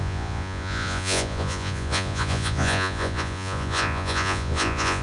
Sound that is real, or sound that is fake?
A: fake